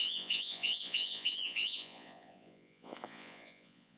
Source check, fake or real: fake